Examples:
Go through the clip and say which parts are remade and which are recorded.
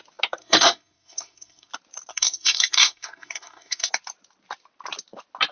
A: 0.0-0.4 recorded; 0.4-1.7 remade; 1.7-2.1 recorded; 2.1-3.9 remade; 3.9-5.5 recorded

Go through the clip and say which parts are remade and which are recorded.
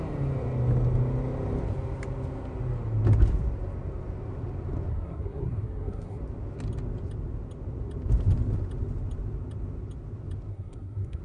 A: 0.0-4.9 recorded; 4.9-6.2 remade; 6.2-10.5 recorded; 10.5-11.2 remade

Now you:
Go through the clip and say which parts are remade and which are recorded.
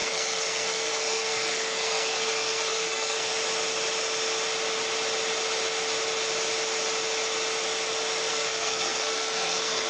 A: 0.0-3.3 remade; 3.3-8.3 recorded; 8.3-9.9 remade